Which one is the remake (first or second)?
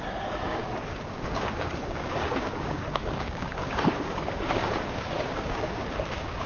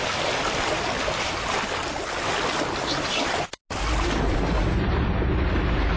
first